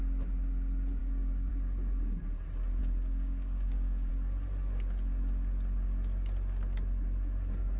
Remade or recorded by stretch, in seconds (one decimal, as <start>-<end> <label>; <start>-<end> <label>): 0.0-1.0 recorded; 1.0-1.5 remade; 1.5-2.8 recorded; 2.8-4.1 remade; 4.1-7.8 recorded